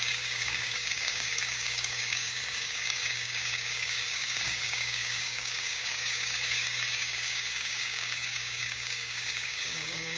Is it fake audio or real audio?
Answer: fake